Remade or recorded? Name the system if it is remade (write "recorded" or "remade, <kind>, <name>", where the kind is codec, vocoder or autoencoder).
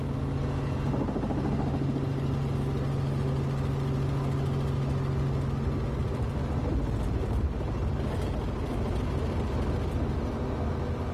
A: recorded